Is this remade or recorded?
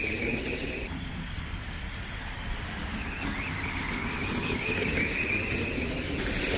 recorded